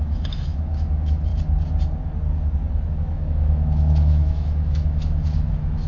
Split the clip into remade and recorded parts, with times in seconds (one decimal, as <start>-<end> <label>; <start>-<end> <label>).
0.0-1.3 remade; 1.3-2.9 recorded; 2.9-5.9 remade